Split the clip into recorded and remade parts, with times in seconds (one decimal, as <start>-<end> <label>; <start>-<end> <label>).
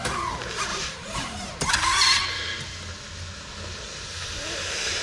0.0-0.7 recorded; 0.7-1.7 remade; 1.7-5.0 recorded